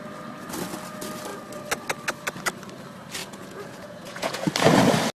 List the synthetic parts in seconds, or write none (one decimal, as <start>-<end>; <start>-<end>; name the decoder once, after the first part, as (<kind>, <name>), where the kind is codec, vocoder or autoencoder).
3.2-4.5 (vocoder, Vocos)